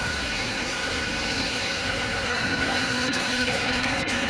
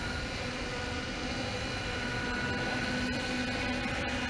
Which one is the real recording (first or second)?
second